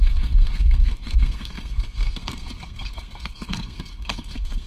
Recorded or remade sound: remade